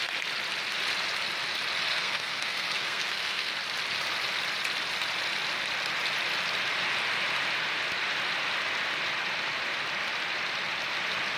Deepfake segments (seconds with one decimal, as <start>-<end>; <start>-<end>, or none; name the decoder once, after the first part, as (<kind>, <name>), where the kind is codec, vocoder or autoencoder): 1.9-3.5 (codec, SNAC)